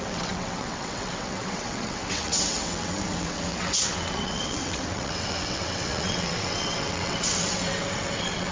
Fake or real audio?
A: fake